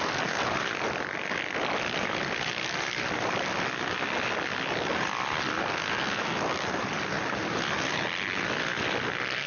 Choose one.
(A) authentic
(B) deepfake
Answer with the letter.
A